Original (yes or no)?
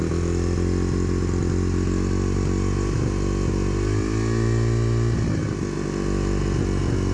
yes